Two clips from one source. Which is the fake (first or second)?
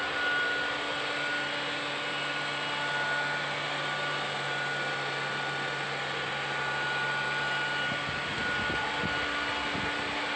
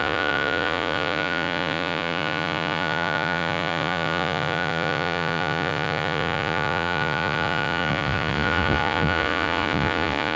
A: second